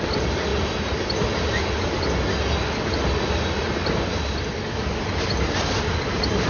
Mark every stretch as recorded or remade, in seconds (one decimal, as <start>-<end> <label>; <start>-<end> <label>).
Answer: 0.0-6.5 recorded